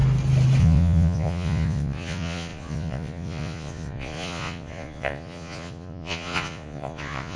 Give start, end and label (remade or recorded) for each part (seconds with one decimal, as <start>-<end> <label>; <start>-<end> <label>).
0.0-0.6 recorded; 0.6-7.4 remade